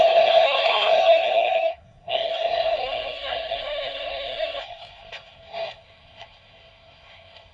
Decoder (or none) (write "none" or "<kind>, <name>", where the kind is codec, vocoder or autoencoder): codec, SNAC